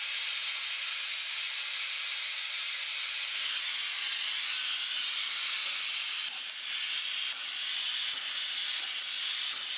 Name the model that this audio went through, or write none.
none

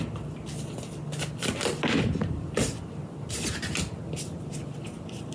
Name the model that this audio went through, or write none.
none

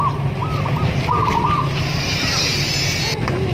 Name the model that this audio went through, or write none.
none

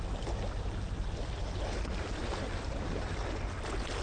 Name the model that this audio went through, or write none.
none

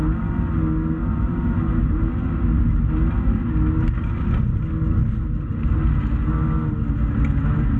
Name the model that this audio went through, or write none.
none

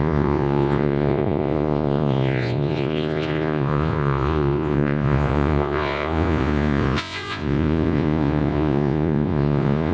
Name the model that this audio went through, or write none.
vocoder, Vocos